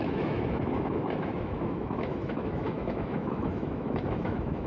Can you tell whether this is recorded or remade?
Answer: remade